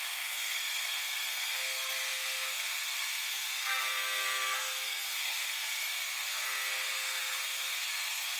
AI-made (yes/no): yes